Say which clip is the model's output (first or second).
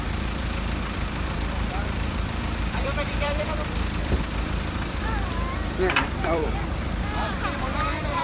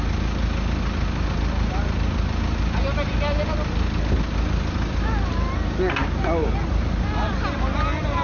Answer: first